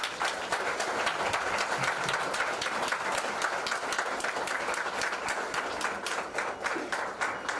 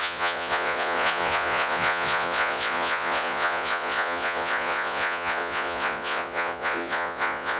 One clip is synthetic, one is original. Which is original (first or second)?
first